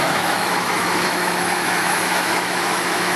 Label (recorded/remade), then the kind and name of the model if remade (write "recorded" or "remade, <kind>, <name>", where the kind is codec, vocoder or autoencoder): remade, autoencoder, DAC-VAE